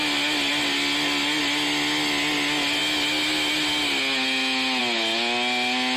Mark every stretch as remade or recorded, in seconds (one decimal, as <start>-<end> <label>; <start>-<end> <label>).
0.0-6.0 recorded